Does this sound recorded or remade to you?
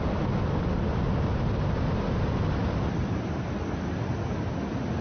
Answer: recorded